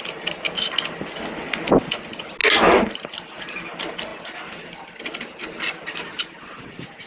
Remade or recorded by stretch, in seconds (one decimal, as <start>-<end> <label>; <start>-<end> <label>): 0.0-7.1 recorded